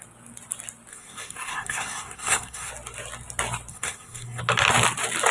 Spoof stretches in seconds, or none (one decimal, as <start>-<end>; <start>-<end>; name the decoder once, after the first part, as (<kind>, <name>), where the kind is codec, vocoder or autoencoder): 0.9-2.7 (codec, SNAC); 3.7-4.4